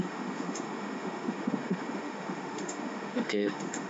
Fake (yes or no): yes